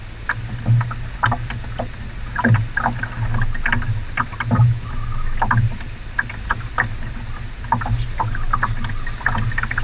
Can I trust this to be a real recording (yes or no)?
yes